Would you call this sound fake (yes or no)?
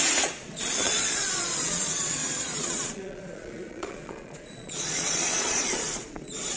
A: yes